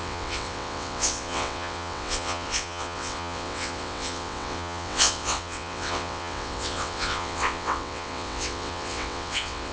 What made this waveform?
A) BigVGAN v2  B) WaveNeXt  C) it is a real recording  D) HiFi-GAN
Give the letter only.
B